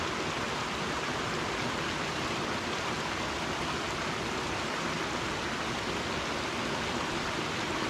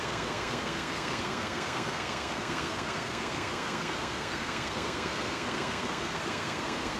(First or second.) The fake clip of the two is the second